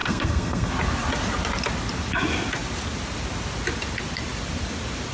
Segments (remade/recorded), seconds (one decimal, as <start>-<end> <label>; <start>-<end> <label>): 0.0-0.7 remade; 0.7-5.1 recorded